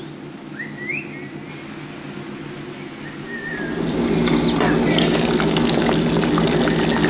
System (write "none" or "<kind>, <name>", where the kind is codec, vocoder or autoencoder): none